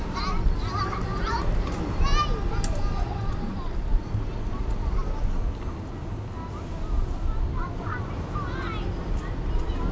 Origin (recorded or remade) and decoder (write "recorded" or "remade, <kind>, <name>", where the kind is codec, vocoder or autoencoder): recorded